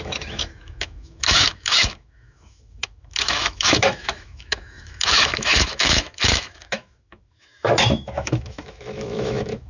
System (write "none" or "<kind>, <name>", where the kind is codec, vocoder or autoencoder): autoencoder, DAC-VAE